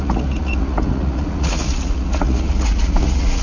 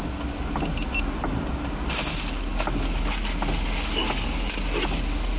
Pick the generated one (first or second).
first